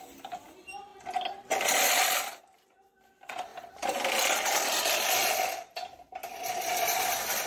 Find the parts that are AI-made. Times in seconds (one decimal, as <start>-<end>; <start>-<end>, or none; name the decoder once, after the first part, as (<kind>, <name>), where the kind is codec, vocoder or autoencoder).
none

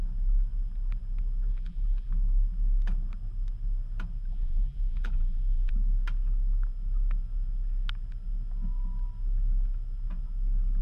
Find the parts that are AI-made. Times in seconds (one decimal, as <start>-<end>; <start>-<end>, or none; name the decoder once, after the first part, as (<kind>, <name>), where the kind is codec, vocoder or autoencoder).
1.5-2.1 (vocoder, BigVGAN v2); 4.3-5.7

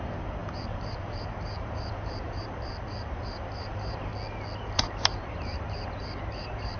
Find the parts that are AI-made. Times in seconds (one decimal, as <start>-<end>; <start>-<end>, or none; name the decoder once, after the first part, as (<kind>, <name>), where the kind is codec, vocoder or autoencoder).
0.0-4.1 (vocoder, BigVGAN v2); 4.7-6.8

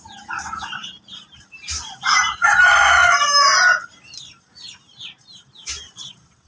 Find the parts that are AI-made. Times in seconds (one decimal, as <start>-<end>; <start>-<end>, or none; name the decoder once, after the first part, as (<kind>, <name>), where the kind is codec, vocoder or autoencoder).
0.0-3.0 (vocoder, BigVGAN v2); 4.2-6.5

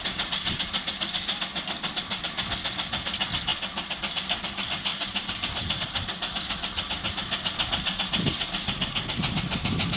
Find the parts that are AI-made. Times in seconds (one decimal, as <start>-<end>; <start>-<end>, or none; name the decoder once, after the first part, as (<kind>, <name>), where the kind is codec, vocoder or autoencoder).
4.9-5.8 (vocoder, BigVGAN v2)

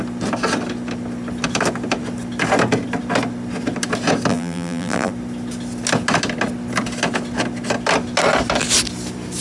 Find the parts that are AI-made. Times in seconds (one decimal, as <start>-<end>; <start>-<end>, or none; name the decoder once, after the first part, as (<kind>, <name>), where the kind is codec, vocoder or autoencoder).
4.3-5.1 (vocoder, BigVGAN v2)

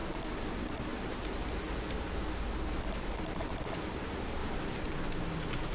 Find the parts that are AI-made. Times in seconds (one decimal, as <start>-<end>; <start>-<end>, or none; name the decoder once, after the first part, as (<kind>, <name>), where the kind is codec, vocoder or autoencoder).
4.4-5.1 (vocoder, BigVGAN v2)